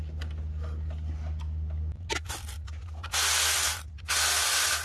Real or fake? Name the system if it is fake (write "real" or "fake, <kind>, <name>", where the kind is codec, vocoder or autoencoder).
real